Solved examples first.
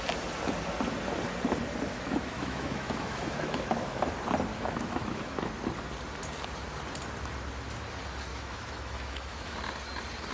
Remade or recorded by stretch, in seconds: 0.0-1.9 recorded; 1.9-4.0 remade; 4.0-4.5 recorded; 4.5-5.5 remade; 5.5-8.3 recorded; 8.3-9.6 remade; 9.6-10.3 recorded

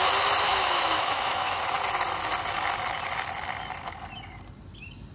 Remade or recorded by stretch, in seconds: 0.0-0.5 recorded; 0.5-1.6 remade; 1.6-5.1 recorded

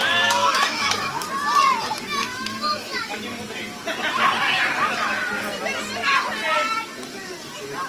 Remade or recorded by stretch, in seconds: 0.0-0.4 recorded; 0.4-1.3 remade; 1.3-2.3 recorded; 2.3-3.2 remade; 3.2-7.9 recorded